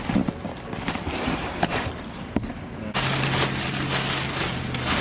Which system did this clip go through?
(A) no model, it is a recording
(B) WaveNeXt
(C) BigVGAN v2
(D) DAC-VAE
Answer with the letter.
A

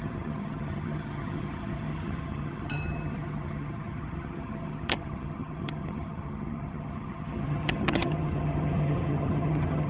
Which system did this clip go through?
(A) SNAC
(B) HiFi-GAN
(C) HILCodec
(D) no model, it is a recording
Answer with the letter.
B